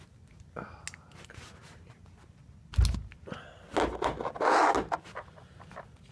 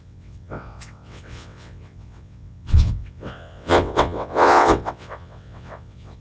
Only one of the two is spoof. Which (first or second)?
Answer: second